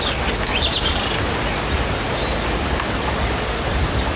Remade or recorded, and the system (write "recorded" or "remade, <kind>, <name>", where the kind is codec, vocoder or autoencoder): recorded